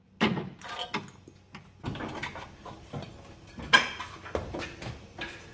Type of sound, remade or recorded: recorded